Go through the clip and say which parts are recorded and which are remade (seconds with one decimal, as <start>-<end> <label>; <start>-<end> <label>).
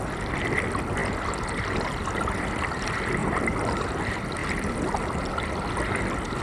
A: 0.0-3.2 recorded; 3.2-3.8 remade; 3.8-4.4 recorded; 4.4-5.3 remade; 5.3-6.4 recorded